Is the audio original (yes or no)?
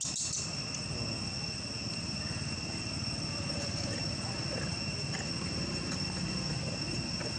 yes